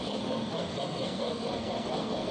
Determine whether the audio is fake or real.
fake